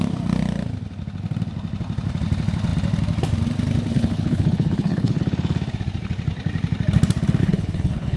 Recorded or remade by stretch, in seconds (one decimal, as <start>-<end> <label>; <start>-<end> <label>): 0.0-3.9 recorded; 3.9-5.2 remade; 5.2-7.4 recorded; 7.4-8.2 remade